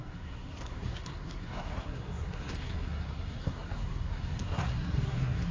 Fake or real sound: fake